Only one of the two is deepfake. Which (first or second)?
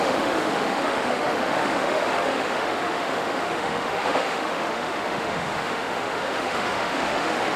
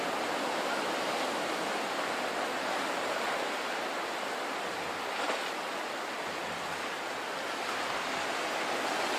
first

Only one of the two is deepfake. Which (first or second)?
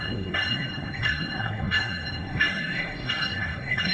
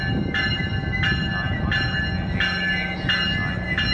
first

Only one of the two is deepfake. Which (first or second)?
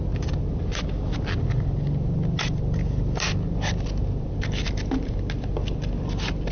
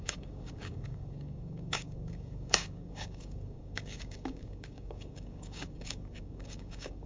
second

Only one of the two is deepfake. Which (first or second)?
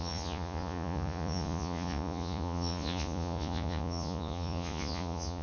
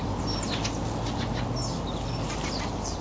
first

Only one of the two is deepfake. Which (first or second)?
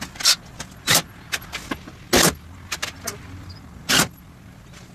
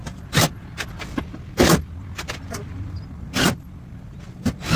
second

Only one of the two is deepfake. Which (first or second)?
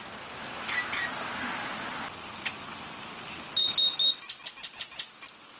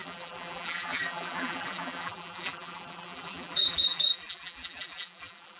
second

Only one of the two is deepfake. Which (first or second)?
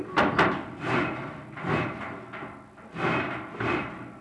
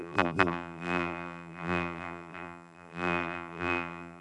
second